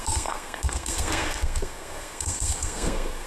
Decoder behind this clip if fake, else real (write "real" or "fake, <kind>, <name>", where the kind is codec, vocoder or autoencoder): fake, codec, SNAC